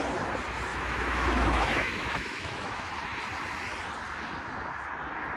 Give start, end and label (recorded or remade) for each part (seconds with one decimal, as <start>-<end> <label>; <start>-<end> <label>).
0.0-0.7 recorded; 0.7-2.9 remade; 2.9-5.4 recorded